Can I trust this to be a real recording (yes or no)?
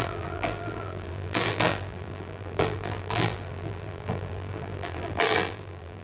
no